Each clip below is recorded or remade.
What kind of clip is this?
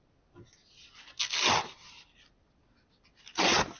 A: recorded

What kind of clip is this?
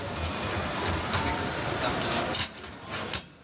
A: remade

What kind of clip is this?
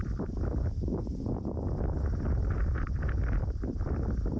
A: recorded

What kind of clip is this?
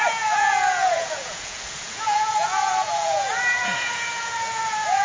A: remade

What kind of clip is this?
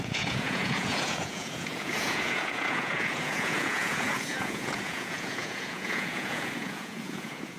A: remade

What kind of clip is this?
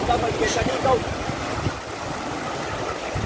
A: recorded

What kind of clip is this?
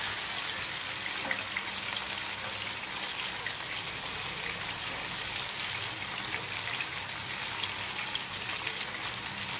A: recorded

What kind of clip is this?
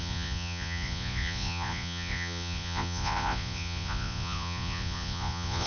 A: remade